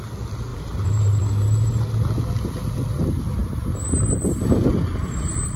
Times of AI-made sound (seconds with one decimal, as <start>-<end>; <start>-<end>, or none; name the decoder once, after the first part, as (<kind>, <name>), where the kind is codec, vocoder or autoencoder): 0.5-1.3 (vocoder, BigVGAN v2); 3.4-4.1; 4.9-5.6